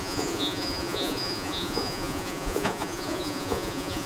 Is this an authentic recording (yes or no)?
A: no